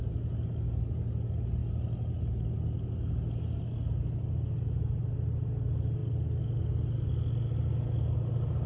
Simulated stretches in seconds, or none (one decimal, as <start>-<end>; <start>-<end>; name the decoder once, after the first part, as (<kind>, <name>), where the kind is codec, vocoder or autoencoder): none